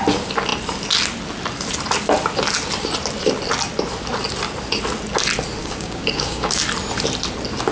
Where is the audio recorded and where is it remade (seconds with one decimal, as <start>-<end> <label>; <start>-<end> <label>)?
0.0-5.6 recorded; 5.6-6.6 remade; 6.6-7.7 recorded

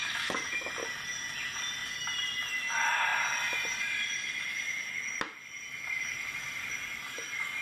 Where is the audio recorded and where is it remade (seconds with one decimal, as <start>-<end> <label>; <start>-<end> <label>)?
0.0-0.7 remade; 0.7-7.6 recorded

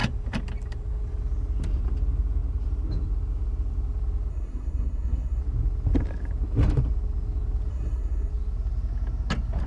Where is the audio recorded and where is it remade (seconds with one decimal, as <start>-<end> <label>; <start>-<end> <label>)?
0.0-4.3 recorded; 4.3-5.4 remade; 5.4-7.7 recorded; 7.7-8.3 remade; 8.3-9.7 recorded

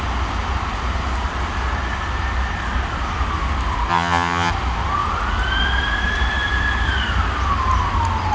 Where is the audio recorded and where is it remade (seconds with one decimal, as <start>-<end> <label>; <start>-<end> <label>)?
0.0-3.9 recorded; 3.9-4.5 remade; 4.5-8.3 recorded